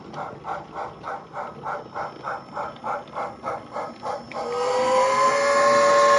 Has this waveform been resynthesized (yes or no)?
no